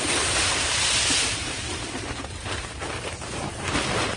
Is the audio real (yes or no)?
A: no